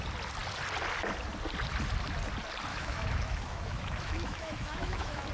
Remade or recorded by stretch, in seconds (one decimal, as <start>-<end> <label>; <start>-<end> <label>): 0.0-2.7 recorded; 2.7-5.3 remade